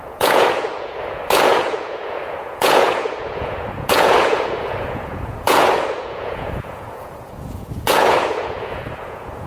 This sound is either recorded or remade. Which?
remade